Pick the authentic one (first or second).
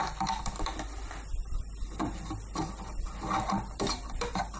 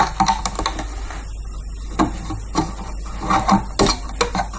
second